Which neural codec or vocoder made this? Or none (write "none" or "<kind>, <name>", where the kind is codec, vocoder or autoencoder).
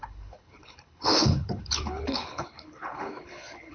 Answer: codec, HILCodec